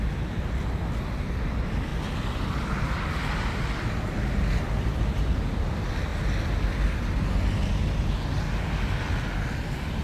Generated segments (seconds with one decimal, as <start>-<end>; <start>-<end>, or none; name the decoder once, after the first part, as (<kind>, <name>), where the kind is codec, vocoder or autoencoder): none